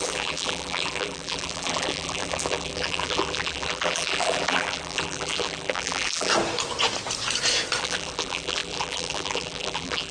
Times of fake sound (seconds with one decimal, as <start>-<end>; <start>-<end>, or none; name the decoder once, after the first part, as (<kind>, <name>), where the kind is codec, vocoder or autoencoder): 0.0-6.3 (vocoder, BigVGAN v2); 7.8-10.1